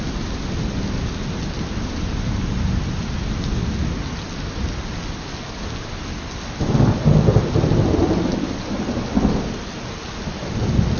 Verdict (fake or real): real